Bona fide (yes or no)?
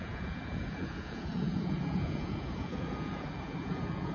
no